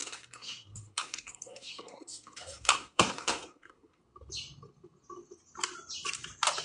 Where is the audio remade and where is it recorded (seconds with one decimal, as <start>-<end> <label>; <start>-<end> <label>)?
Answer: 0.0-4.0 remade; 4.0-6.6 recorded